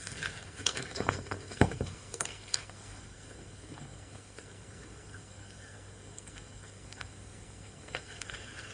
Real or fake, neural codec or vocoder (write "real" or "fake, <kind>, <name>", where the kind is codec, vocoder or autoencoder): fake, codec, SNAC